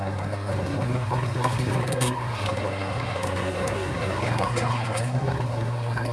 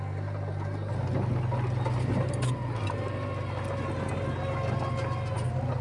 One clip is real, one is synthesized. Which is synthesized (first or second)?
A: first